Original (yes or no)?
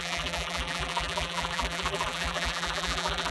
no